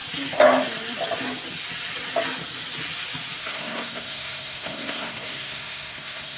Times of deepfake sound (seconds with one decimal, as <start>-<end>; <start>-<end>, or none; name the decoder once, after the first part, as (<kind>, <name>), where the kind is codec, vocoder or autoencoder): 3.4-6.4 (codec, SNAC)